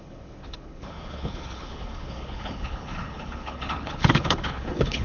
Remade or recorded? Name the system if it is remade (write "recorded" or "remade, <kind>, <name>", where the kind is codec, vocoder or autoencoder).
remade, codec, HILCodec